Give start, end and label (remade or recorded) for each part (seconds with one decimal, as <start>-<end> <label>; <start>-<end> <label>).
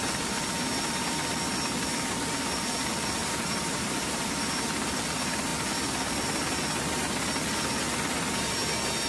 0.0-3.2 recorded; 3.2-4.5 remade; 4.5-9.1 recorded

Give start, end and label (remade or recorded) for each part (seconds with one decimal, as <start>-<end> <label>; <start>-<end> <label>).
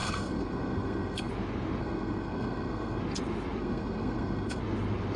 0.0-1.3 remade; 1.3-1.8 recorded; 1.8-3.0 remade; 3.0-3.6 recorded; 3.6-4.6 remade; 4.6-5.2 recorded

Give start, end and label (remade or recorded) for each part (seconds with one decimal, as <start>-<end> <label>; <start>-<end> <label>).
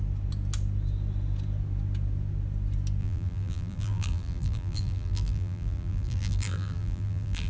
0.0-3.0 recorded; 3.0-7.5 remade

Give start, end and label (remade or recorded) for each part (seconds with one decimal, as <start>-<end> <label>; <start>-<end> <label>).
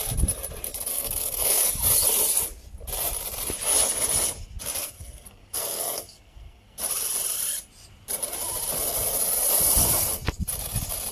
0.0-0.9 recorded; 0.9-1.7 remade; 1.7-4.8 recorded; 4.8-6.8 remade; 6.8-11.1 recorded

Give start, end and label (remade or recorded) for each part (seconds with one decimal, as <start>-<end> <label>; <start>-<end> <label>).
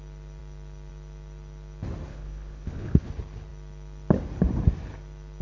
0.0-2.1 recorded; 2.1-3.1 remade; 3.1-5.4 recorded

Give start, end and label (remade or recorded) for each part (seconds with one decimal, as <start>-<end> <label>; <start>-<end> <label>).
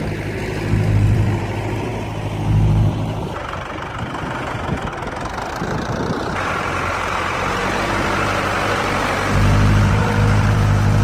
0.0-4.9 remade; 4.9-5.5 recorded; 5.5-11.0 remade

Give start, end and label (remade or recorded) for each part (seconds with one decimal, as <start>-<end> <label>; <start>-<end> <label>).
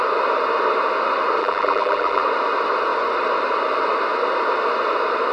0.0-1.4 recorded; 1.4-2.2 remade; 2.2-5.3 recorded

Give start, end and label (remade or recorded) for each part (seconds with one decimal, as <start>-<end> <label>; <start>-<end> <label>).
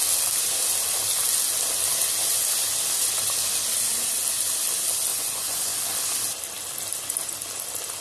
0.0-5.1 recorded; 5.1-5.9 remade; 5.9-8.0 recorded